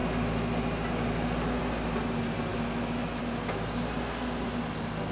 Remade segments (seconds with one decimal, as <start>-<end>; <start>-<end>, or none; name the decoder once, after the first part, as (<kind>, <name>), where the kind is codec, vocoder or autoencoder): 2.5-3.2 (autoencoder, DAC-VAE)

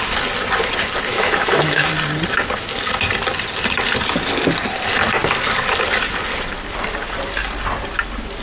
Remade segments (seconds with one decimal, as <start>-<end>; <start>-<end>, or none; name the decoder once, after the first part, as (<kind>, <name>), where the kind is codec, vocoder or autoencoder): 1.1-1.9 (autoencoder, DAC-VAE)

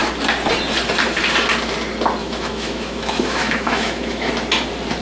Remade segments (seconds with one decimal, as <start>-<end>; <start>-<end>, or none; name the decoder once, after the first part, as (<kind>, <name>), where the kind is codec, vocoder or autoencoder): 2.2-4.3 (autoencoder, DAC-VAE)